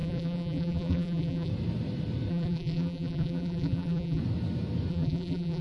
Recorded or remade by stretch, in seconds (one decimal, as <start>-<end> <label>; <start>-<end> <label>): 0.0-1.5 remade; 1.5-2.3 recorded; 2.3-4.2 remade; 4.2-4.9 recorded; 4.9-5.6 remade